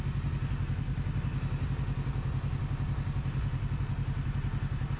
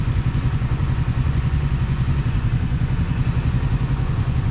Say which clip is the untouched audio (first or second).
first